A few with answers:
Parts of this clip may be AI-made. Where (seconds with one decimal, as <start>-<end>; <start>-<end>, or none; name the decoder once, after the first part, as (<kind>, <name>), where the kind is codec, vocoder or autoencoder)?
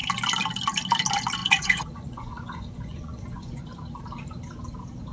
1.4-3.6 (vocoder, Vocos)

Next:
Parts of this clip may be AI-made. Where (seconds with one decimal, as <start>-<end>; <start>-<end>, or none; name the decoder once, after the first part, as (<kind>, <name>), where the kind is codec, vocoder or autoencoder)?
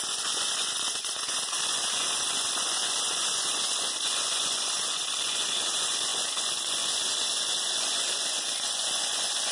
0.0-9.5 (vocoder, Vocos)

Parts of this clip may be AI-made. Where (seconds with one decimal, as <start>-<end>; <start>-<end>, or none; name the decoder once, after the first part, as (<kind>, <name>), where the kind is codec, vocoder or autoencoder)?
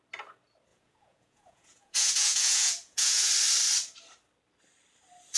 0.7-3.3 (vocoder, Vocos)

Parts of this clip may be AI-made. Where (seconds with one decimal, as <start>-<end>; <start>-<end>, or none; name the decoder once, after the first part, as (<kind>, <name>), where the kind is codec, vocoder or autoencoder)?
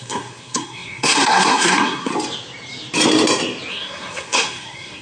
0.0-2.1 (codec, SNAC); 3.7-5.0